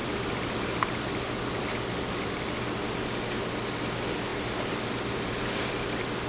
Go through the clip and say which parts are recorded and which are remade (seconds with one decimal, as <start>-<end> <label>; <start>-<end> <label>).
0.0-6.3 recorded